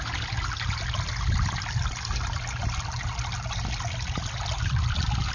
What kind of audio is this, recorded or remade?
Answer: recorded